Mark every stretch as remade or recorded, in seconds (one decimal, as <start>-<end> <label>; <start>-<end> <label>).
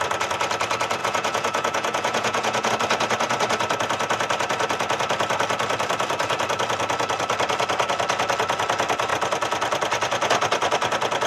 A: 0.0-1.0 recorded; 1.0-2.7 remade; 2.7-11.3 recorded